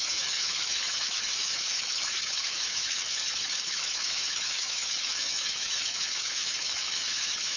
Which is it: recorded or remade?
remade